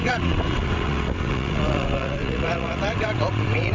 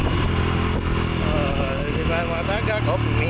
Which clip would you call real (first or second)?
second